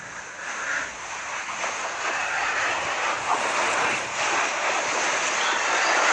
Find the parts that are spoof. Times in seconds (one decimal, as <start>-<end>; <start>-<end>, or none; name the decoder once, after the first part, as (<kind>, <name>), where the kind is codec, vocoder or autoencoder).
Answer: none